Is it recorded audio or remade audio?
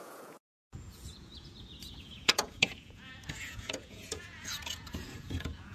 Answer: remade